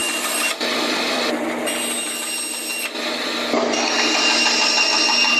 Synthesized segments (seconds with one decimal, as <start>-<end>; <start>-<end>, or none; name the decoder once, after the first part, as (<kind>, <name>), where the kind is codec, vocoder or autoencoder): 0.0-1.3 (vocoder, BigVGAN v2)